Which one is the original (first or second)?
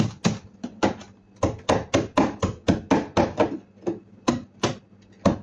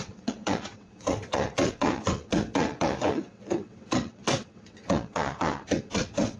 first